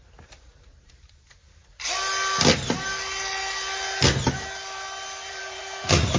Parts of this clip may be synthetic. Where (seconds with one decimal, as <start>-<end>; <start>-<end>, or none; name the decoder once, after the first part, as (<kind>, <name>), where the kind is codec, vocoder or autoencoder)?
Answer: 0.0-1.6 (vocoder, BigVGAN v2); 5.3-6.2